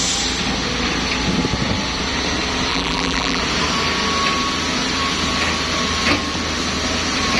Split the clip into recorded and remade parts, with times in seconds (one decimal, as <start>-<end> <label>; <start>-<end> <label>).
0.0-2.7 recorded; 2.7-3.4 remade; 3.4-7.4 recorded